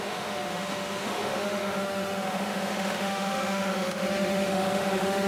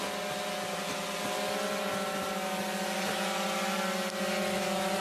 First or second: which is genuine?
second